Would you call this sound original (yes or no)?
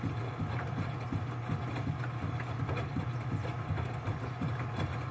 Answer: yes